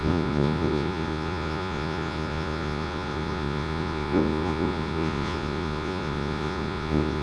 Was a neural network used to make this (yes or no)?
yes